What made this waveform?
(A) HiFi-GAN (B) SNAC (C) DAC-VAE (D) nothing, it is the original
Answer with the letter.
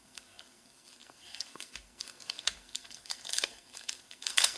B